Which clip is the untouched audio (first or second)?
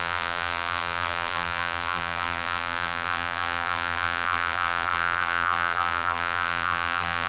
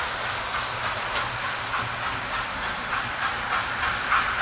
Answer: second